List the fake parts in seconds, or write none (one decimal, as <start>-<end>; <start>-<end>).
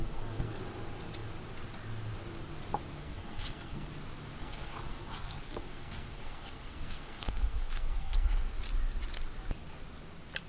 0.0-0.6; 3.0-3.9; 4.4-8.5